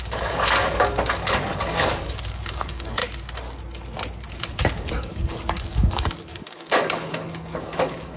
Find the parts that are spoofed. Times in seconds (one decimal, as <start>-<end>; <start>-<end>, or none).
0.0-3.0; 4.4-8.2